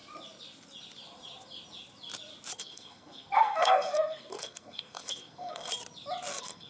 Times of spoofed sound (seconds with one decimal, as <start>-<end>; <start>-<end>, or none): 2.6-5.7; 6.3-6.7

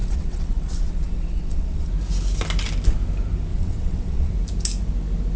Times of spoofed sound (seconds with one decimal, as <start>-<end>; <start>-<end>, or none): 0.0-1.9; 3.5-4.3